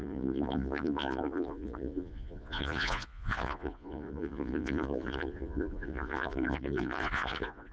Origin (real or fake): fake